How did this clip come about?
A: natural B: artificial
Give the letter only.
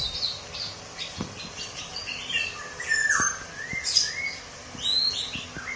A